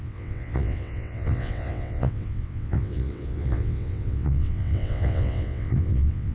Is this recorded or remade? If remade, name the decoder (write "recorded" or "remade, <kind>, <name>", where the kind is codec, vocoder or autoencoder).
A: remade, vocoder, WaveNeXt